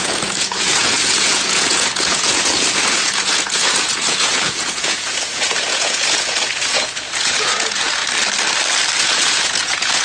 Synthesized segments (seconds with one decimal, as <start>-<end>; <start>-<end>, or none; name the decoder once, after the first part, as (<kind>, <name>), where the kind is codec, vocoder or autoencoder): 0.0-8.0 (vocoder, Vocos); 9.0-10.0

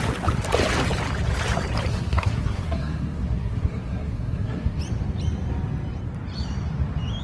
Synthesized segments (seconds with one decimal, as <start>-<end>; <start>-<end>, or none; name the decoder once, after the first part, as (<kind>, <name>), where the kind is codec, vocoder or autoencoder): 1.9-4.8 (codec, SNAC)

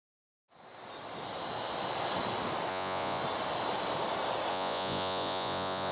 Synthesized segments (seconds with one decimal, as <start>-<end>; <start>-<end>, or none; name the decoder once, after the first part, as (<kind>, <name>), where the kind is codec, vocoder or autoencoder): 0.0-0.4 (vocoder, Vocos); 2.7-3.2; 4.5-5.9